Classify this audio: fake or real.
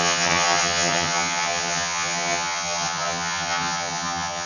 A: fake